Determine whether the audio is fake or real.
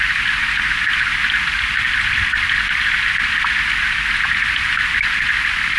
real